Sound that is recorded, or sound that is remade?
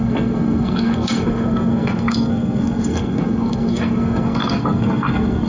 remade